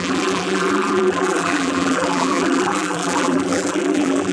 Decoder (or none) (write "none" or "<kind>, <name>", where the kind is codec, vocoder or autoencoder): vocoder, BigVGAN v2